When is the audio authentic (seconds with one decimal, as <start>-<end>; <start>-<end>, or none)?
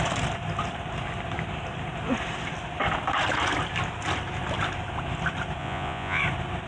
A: 0.0-5.6; 6.2-6.7